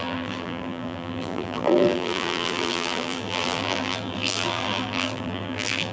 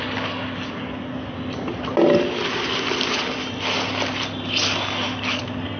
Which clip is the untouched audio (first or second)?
second